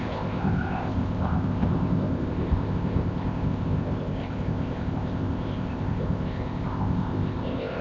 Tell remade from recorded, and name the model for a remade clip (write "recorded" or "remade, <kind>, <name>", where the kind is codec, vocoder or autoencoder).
remade, codec, ZipCodec